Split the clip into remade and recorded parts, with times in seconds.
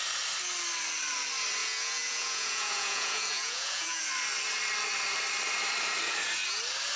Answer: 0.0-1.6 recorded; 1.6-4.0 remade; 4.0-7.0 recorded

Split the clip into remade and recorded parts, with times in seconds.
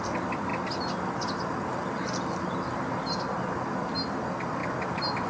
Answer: 0.0-5.3 recorded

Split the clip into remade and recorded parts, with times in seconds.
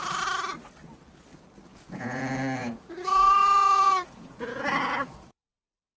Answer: 0.0-1.7 recorded; 1.7-2.2 remade; 2.2-2.6 recorded; 2.6-5.6 remade; 5.6-6.0 recorded